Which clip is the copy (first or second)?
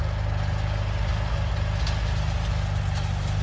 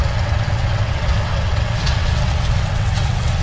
second